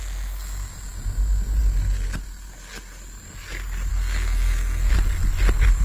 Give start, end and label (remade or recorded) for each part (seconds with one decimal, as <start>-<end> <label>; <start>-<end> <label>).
0.0-3.9 recorded; 3.9-4.9 remade; 4.9-5.8 recorded